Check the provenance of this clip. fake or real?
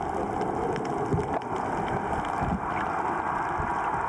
real